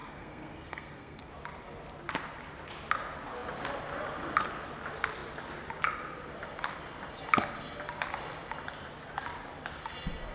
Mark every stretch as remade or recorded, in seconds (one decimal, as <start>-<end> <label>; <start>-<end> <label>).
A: 0.0-1.3 remade; 1.3-10.3 recorded